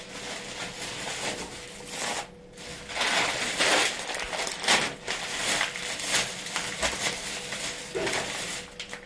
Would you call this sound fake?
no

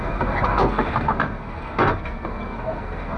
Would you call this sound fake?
yes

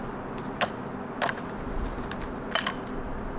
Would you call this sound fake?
no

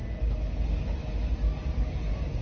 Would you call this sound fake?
no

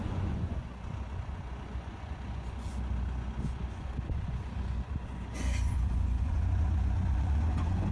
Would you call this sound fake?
yes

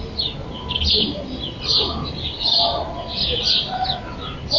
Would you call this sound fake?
no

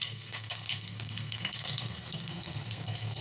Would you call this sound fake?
yes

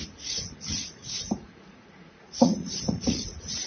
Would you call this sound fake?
yes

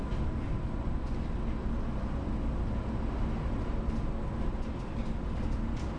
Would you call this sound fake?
no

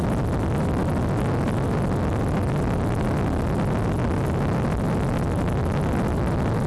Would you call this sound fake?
no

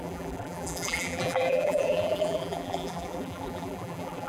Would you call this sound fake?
yes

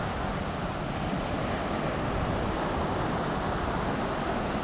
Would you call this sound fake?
no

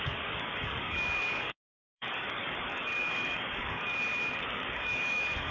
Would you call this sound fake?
yes